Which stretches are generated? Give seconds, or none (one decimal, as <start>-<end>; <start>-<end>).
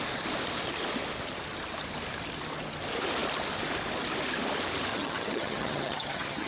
4.9-6.5